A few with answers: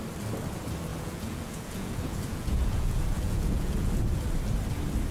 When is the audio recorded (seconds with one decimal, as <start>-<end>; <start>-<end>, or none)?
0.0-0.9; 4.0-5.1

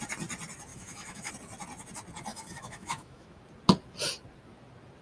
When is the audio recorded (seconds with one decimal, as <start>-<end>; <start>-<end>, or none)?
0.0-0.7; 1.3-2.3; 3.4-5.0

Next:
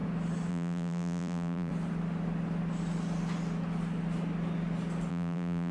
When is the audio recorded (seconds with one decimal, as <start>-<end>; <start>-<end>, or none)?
0.0-0.5; 1.7-5.1